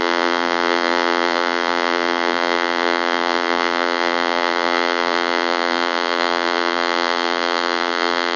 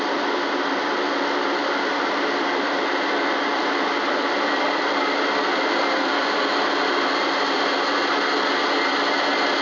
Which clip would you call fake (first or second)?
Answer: first